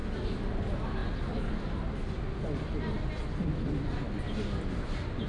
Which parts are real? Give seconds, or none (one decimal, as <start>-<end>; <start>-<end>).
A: 0.0-5.3